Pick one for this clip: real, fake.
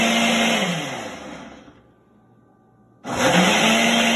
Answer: real